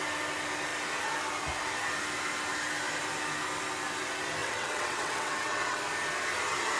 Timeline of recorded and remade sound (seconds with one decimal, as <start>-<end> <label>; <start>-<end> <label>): 0.0-4.4 recorded; 4.4-5.8 remade; 5.8-6.8 recorded